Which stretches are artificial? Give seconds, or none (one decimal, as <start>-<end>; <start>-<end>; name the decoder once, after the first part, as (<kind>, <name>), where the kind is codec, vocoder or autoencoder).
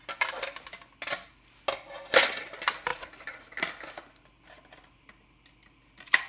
none